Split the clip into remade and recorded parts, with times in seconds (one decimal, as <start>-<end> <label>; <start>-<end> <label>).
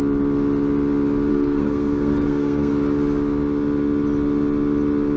0.0-1.3 recorded; 1.3-2.7 remade; 2.7-5.2 recorded